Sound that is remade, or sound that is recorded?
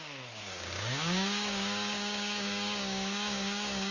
remade